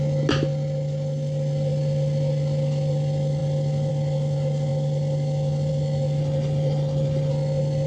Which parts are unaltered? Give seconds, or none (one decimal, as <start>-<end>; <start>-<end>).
0.0-6.2; 7.3-7.9